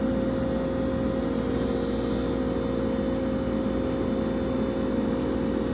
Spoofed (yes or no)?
no